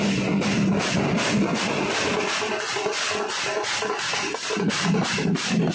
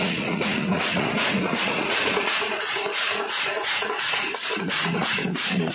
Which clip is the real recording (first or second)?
first